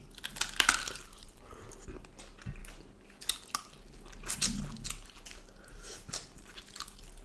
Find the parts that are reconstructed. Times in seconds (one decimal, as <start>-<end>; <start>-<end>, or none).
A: 0.8-1.4